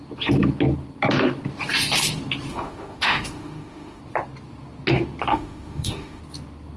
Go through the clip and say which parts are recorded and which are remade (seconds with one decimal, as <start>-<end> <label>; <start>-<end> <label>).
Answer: 0.0-2.5 recorded; 2.5-4.0 remade; 4.0-5.3 recorded; 5.3-6.2 remade; 6.2-6.8 recorded